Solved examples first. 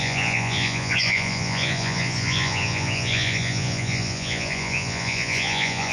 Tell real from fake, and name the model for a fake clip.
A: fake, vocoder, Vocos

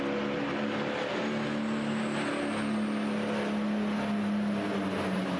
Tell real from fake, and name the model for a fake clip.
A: real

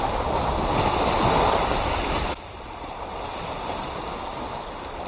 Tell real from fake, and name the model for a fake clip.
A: real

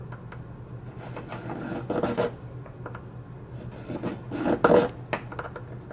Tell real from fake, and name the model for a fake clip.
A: real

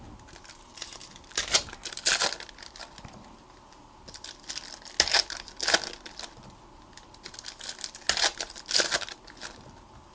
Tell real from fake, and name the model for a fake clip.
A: real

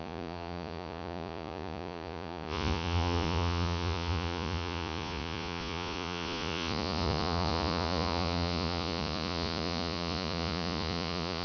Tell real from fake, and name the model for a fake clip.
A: fake, vocoder, Vocos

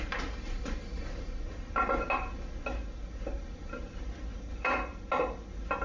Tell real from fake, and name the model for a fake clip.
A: real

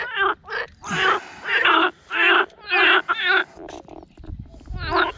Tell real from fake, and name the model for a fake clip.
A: real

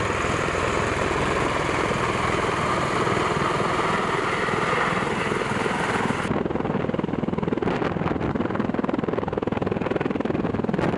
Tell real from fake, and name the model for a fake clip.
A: real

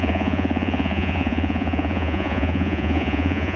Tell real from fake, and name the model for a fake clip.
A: fake, vocoder, Vocos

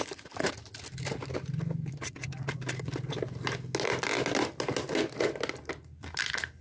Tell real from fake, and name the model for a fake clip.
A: real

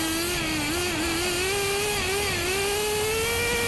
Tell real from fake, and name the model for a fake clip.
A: real